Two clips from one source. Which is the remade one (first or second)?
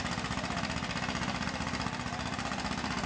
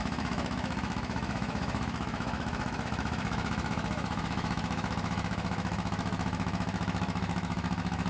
second